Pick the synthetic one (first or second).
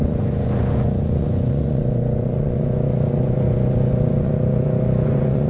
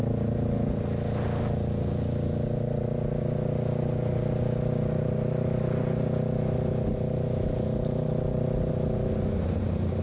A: first